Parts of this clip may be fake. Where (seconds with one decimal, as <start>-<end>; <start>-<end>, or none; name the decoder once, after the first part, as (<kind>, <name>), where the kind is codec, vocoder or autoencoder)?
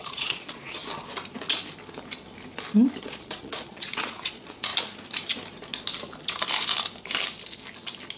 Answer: 0.0-0.8 (vocoder, Vocos); 3.1-4.7